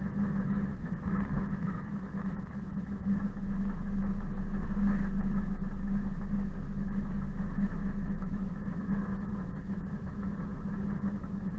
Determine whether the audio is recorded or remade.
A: remade